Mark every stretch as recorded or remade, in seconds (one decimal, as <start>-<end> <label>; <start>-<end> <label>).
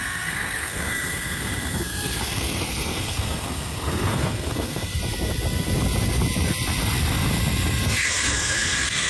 0.0-5.0 remade; 5.0-7.9 recorded; 7.9-9.1 remade